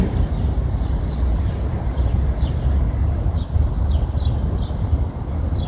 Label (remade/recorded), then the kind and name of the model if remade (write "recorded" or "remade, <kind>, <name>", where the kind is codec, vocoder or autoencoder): recorded